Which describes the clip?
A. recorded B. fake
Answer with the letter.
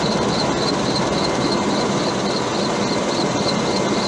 A